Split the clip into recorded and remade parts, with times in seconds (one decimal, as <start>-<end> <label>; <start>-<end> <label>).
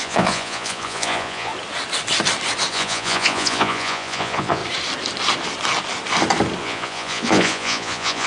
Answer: 0.0-1.5 remade; 1.5-2.7 recorded; 2.7-4.6 remade; 4.6-6.6 recorded; 6.6-8.3 remade